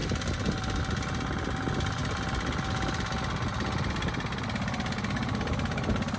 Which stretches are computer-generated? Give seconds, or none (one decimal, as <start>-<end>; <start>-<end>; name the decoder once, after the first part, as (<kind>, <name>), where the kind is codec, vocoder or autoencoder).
none